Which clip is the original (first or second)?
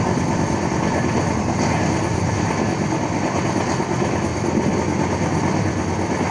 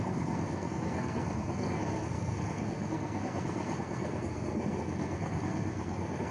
first